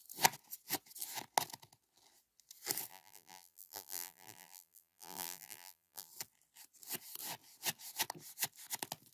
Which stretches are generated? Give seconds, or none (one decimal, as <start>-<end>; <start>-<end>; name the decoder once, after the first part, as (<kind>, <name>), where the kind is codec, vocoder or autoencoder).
2.9-6.1 (vocoder, BigVGAN v2)